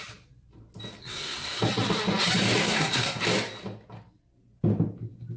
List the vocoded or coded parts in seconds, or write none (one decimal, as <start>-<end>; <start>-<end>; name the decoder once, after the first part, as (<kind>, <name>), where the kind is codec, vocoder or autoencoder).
1.0-1.6 (codec, SNAC); 2.6-3.2